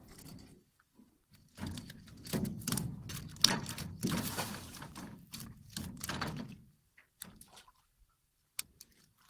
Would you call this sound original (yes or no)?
no